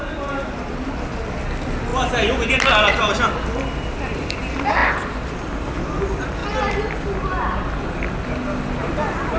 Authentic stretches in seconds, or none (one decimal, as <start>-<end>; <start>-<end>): 0.0-9.4